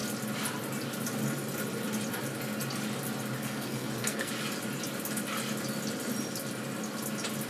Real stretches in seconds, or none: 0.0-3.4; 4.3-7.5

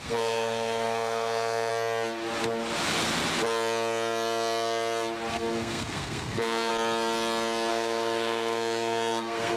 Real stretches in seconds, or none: 1.7-5.3; 6.7-7.7